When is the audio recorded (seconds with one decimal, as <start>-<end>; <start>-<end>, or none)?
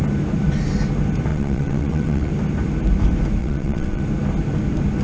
0.0-1.3; 2.3-3.4; 4.0-5.0